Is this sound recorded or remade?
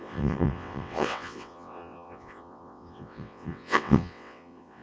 remade